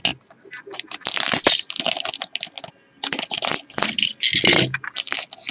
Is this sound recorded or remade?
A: recorded